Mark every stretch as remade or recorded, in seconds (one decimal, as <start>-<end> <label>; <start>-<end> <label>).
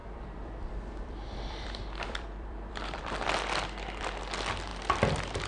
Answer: 0.0-3.3 remade; 3.3-5.5 recorded